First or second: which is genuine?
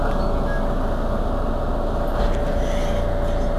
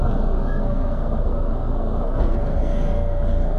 first